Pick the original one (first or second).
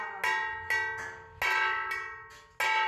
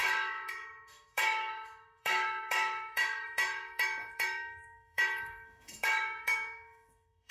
first